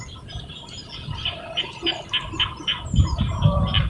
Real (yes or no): yes